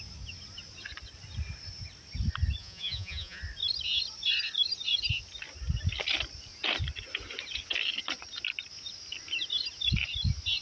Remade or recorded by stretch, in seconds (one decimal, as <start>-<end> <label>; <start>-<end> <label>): 0.0-2.6 recorded; 2.6-3.4 remade; 3.4-10.6 recorded